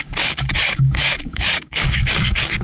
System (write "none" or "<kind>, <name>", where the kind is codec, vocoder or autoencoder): codec, DAC